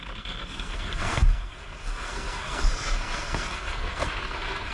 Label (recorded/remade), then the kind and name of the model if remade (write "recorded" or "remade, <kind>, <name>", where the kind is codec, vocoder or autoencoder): remade, codec, SNAC